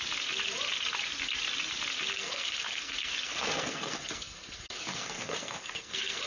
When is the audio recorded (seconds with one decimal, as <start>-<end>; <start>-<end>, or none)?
0.0-2.1